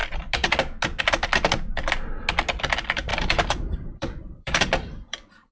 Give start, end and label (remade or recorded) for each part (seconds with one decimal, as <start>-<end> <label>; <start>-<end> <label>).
0.0-3.1 recorded; 3.1-5.5 remade